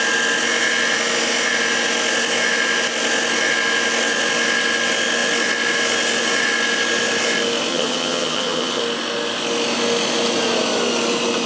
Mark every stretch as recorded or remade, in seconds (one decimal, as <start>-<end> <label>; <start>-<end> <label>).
0.0-7.7 recorded; 7.7-8.8 remade; 8.8-11.5 recorded